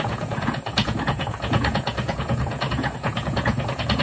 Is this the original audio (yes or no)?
no